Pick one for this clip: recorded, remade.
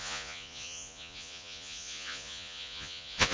remade